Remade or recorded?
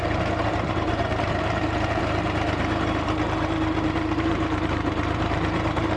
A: remade